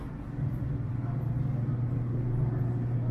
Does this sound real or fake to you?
real